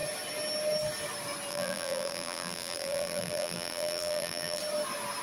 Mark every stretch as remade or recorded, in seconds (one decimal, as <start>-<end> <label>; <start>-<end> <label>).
0.0-1.5 recorded; 1.5-4.6 remade; 4.6-5.2 recorded